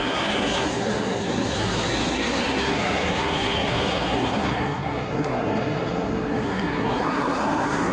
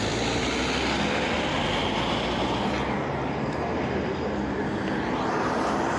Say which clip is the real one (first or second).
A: second